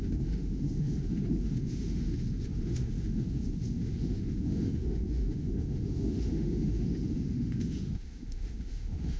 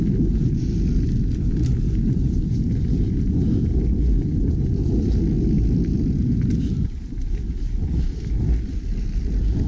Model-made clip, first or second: first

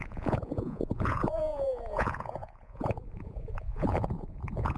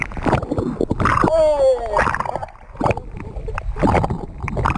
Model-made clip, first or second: first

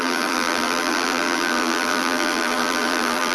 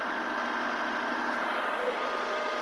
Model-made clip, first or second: first